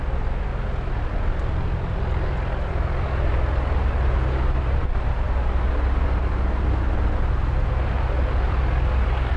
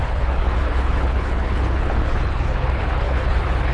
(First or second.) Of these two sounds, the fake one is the second